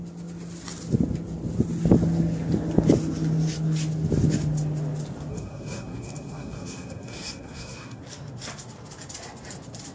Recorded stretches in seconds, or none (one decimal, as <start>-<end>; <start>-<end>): 0.0-5.3; 8.0-9.9